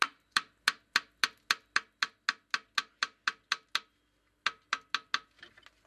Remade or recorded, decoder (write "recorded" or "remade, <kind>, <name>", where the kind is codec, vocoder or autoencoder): recorded